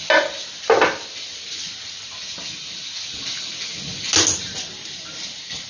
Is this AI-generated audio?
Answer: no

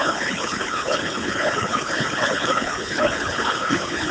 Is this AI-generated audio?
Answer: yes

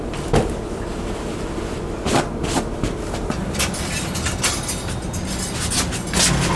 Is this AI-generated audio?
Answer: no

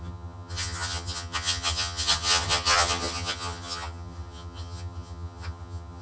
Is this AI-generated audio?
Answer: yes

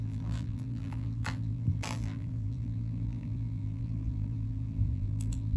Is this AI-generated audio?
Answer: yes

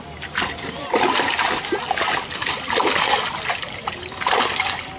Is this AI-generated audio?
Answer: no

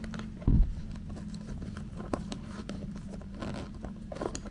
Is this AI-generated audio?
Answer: no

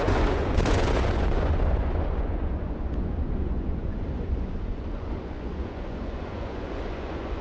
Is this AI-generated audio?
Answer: yes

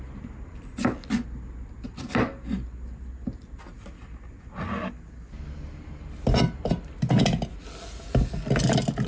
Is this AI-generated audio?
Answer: no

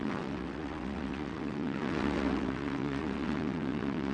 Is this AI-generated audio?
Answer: yes